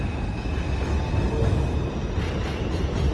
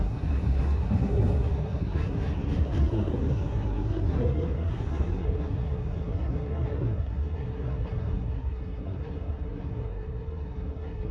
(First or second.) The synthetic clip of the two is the second